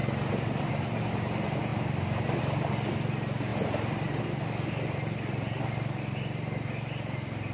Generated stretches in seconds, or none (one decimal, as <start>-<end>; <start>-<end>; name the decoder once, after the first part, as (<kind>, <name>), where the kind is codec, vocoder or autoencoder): 0.7-7.5 (vocoder, BigVGAN v2)